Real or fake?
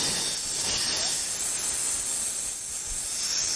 real